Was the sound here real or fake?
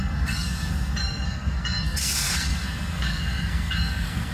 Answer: fake